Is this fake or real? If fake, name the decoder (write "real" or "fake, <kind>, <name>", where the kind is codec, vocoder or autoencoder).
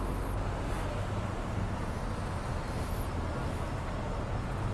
real